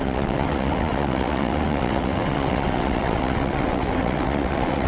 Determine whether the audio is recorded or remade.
remade